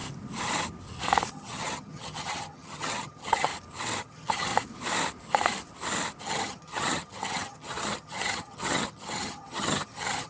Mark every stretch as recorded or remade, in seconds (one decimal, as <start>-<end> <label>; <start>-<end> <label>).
0.0-1.3 recorded; 1.3-3.5 remade; 3.5-4.0 recorded; 4.0-4.5 remade; 4.5-6.2 recorded; 6.2-10.3 remade